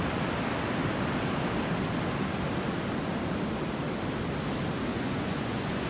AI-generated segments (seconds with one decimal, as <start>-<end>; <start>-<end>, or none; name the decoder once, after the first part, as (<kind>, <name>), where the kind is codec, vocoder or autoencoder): 4.9-5.9 (vocoder, Vocos)